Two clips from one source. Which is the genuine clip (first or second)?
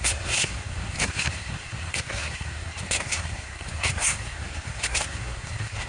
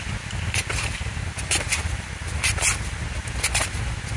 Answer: second